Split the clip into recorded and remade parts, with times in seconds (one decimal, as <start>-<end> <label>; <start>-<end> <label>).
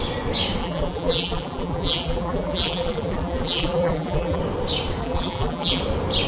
0.0-0.6 recorded; 0.6-4.4 remade; 4.4-5.0 recorded; 5.0-5.8 remade; 5.8-6.3 recorded